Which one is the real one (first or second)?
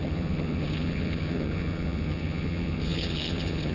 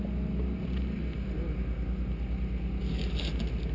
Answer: second